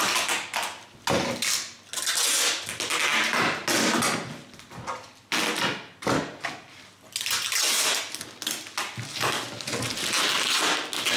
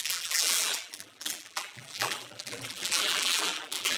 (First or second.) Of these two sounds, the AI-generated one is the second